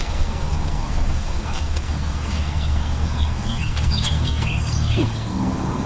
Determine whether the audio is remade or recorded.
remade